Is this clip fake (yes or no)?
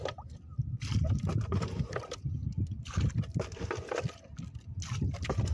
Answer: no